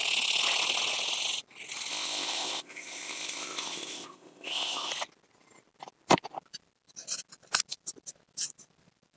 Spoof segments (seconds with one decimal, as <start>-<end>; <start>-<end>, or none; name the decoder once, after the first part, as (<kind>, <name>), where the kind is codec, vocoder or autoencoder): 1.9-4.9 (codec, ZipCodec)